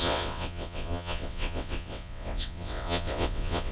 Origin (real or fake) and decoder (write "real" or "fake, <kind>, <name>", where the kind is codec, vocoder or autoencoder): fake, vocoder, WaveNeXt